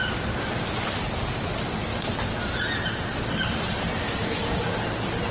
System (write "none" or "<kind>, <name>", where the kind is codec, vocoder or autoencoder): none